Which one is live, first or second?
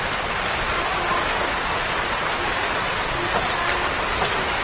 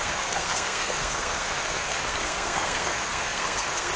first